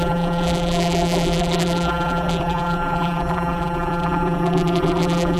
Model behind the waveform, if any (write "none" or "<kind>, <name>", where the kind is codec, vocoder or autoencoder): vocoder, BigVGAN v2